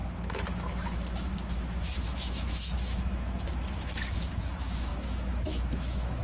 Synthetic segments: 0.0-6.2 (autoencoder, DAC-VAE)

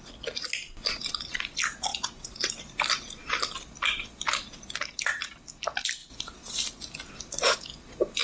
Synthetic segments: 1.9-2.5 (vocoder, WaveNeXt)

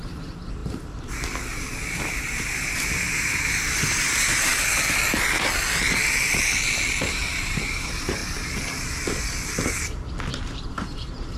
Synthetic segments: 0.0-0.6 (vocoder, BigVGAN v2); 1.9-4.5; 7.1-8.2; 10.3-11.4